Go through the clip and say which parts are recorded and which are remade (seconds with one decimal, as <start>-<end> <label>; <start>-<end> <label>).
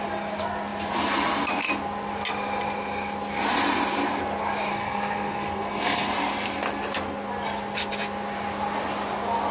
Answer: 0.0-4.7 recorded; 4.7-6.1 remade; 6.1-9.5 recorded